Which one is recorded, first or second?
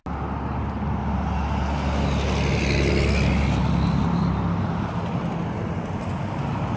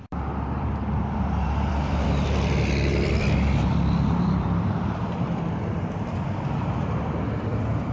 first